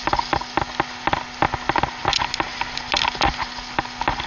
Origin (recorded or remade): recorded